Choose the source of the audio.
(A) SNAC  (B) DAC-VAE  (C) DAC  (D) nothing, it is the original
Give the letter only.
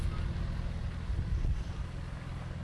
D